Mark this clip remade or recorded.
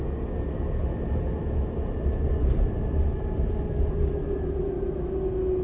recorded